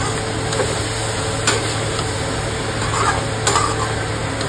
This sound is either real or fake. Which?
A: real